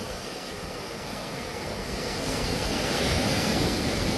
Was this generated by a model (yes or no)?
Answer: yes